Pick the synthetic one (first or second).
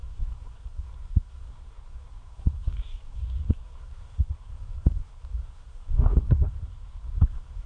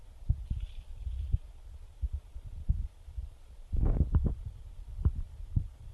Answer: first